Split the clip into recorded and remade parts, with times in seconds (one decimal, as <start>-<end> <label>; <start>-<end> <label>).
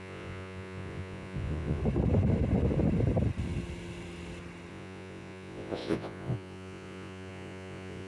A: 0.0-1.8 remade; 1.8-4.7 recorded; 4.7-8.1 remade